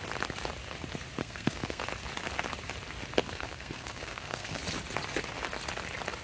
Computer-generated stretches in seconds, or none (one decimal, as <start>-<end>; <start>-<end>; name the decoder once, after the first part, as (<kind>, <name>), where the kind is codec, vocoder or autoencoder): 1.2-1.8 (codec, SNAC); 3.2-4.6